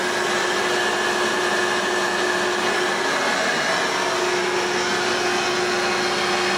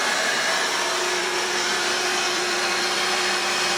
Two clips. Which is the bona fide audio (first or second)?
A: first